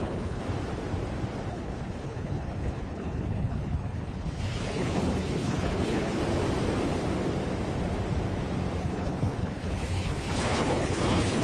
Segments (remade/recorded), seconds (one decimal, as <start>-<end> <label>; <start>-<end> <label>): 0.0-0.4 remade; 0.4-1.5 recorded; 1.5-6.2 remade; 6.2-8.8 recorded; 8.8-11.4 remade